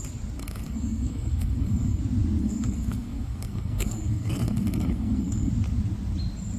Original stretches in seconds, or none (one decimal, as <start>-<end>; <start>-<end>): 0.0-0.4; 2.0-2.4; 5.5-6.6